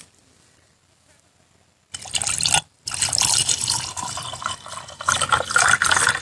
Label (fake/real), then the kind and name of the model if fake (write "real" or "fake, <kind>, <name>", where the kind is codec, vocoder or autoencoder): real